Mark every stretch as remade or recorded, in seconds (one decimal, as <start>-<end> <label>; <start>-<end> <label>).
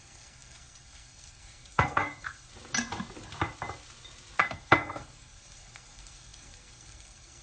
0.0-2.5 remade; 2.5-4.4 recorded; 4.4-7.4 remade